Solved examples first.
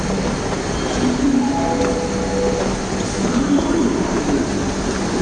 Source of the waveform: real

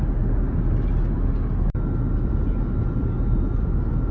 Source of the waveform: real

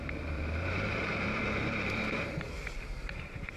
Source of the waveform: fake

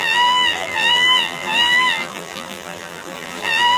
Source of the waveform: fake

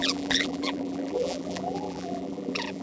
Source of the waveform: fake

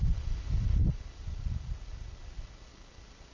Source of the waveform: real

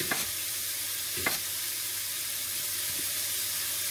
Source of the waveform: fake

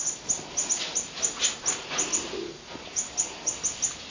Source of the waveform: real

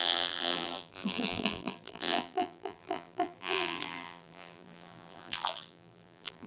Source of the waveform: fake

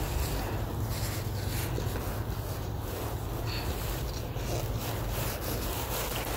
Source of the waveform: real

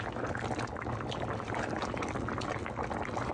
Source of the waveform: real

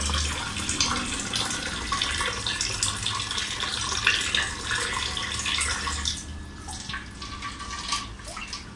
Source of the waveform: real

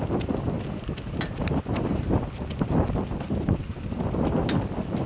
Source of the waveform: real